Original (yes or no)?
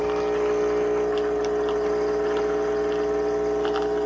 yes